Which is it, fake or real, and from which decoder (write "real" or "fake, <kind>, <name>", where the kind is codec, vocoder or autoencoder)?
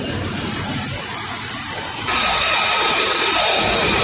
fake, vocoder, BigVGAN v2